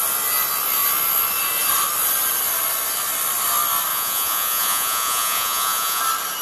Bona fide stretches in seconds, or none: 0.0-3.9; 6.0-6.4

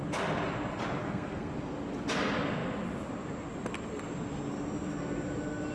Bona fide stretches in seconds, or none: 0.0-1.0; 1.5-5.7

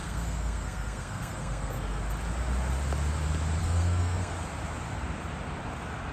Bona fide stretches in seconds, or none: 2.0-3.6; 4.3-6.1